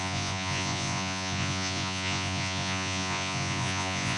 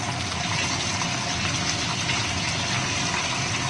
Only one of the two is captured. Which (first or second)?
second